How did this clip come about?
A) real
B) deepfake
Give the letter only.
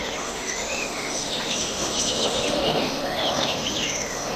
B